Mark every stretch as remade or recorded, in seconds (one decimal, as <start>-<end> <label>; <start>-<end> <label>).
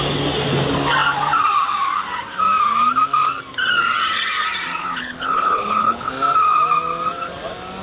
0.0-4.8 recorded; 4.8-6.1 remade; 6.1-7.8 recorded